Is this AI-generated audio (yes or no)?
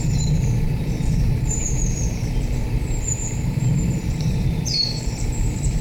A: yes